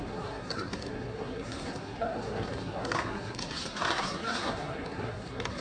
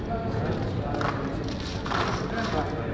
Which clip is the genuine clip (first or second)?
second